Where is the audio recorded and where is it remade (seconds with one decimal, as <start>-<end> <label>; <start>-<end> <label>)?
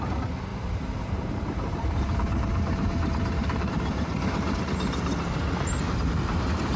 0.0-0.5 recorded; 0.5-4.6 remade; 4.6-6.8 recorded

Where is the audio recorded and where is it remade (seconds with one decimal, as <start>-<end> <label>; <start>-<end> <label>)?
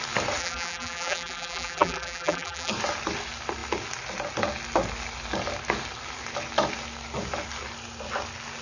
0.0-0.4 recorded; 0.4-2.7 remade; 2.7-8.6 recorded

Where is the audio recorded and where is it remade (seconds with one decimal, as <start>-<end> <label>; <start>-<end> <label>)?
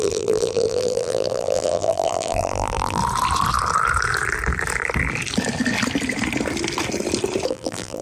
0.0-3.0 remade; 3.0-7.5 recorded; 7.5-8.0 remade